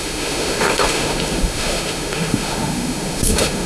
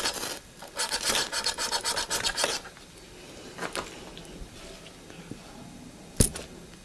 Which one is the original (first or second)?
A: second